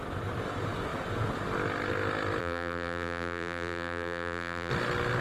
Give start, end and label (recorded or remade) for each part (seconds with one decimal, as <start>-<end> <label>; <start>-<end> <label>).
0.0-2.4 recorded; 2.4-4.7 remade; 4.7-5.2 recorded